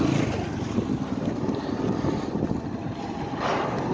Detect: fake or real real